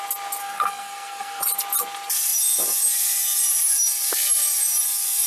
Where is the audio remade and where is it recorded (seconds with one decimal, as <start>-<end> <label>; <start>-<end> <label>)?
0.0-0.4 recorded; 0.4-1.4 remade; 1.4-5.3 recorded

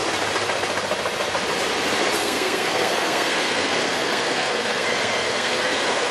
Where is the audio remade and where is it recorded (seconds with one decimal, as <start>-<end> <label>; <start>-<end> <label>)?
0.0-2.2 recorded; 2.2-6.1 remade